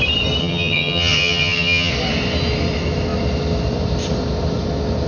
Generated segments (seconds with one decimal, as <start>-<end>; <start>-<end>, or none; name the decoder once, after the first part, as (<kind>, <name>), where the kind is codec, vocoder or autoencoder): 0.4-1.9 (vocoder, HiFi-GAN)